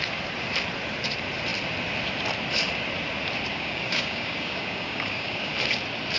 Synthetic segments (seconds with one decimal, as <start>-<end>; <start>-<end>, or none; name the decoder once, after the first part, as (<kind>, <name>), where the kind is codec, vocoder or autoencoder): 3.5-5.5 (codec, DAC)